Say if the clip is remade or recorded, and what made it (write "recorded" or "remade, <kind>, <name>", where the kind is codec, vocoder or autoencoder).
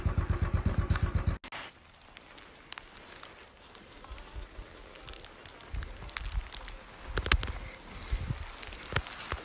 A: recorded